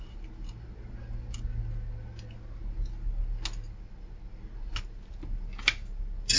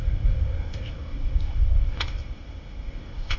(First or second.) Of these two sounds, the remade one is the second